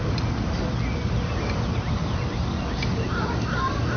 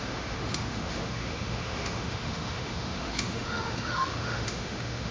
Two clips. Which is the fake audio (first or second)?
second